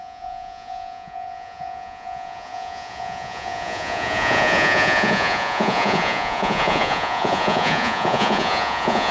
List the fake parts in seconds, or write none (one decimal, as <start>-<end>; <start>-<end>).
0.0-9.1